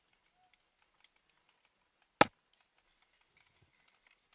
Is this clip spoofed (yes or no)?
no